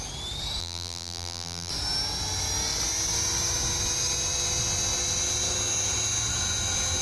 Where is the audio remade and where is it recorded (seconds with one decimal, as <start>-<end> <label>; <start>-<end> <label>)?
0.0-0.6 recorded; 0.6-1.7 remade; 1.7-7.0 recorded